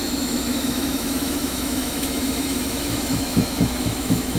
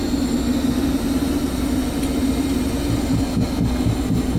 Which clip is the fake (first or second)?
first